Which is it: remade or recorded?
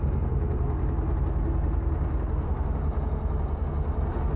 recorded